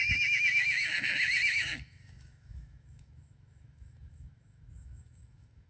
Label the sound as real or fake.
fake